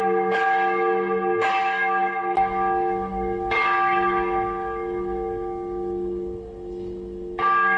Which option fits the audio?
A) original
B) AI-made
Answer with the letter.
B